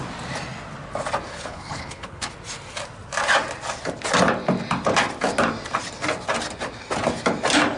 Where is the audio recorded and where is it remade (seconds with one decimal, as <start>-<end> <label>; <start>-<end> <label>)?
0.0-1.3 recorded; 1.3-2.3 remade; 2.3-7.8 recorded